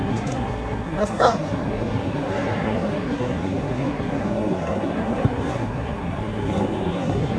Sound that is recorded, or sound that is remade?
remade